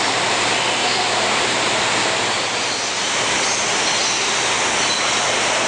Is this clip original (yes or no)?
yes